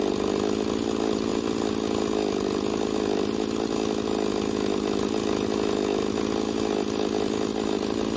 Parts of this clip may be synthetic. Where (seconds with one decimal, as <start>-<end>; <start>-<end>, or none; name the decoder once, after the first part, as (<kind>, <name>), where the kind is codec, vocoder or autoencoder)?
none